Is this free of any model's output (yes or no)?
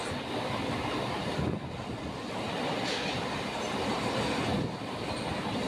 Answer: yes